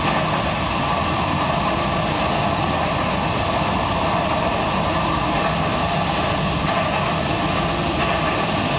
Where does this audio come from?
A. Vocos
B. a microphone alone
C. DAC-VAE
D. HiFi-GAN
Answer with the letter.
B